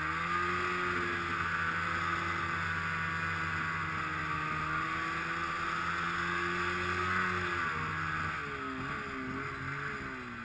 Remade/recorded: recorded